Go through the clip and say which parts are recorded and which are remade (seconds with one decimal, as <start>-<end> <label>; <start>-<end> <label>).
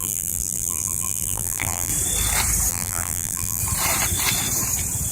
0.0-1.9 remade; 1.9-2.7 recorded; 2.7-3.6 remade; 3.6-5.1 recorded